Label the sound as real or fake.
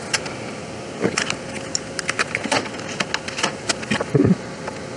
real